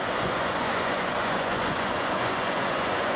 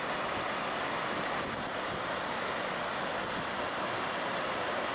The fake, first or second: first